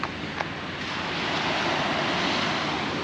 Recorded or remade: recorded